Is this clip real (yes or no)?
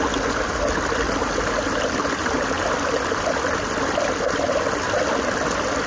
yes